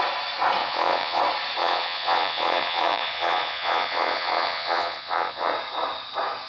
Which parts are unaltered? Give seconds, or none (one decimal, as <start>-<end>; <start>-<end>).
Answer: 0.0-0.6; 1.2-1.6; 5.5-6.5